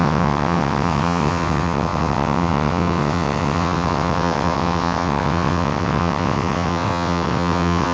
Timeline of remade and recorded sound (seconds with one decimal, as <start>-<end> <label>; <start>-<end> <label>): 0.0-7.9 remade